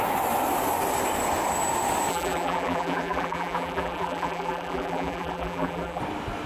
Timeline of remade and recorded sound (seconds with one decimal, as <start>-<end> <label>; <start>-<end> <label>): 0.0-2.1 recorded; 2.1-6.0 remade; 6.0-6.5 recorded